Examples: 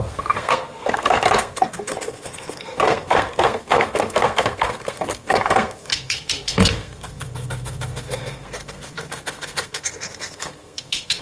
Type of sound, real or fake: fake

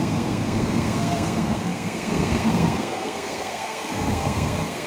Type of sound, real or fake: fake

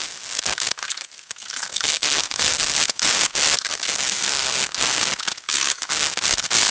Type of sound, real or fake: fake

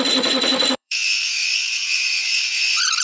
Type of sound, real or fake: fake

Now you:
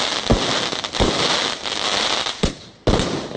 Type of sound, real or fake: real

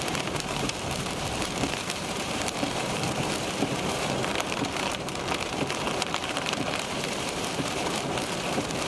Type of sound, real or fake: fake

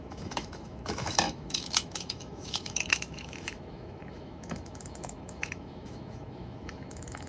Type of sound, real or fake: fake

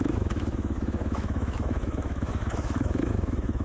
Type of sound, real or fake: fake